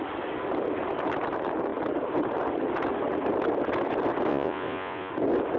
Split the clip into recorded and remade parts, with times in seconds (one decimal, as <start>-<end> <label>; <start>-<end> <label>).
0.0-4.3 recorded; 4.3-5.1 remade; 5.1-5.6 recorded